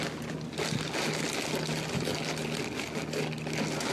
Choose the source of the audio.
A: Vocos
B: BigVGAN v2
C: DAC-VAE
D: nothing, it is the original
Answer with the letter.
D